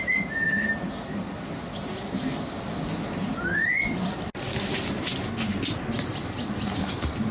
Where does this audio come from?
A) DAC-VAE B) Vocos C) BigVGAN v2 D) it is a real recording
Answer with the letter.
D